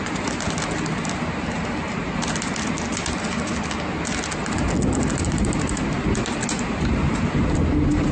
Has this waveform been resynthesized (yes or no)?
no